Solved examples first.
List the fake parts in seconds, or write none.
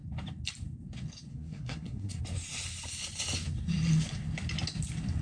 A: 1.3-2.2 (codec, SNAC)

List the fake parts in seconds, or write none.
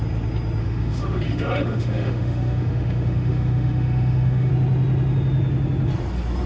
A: 0.6-4.5 (autoencoder, DAC-VAE)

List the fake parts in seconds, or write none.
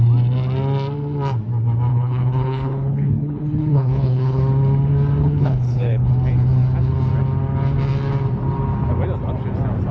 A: 1.9-4.4 (codec, HILCodec); 5.2-6.1